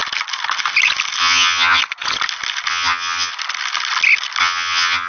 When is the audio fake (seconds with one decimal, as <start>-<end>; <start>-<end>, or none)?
1.2-1.8; 2.7-3.3; 4.4-5.1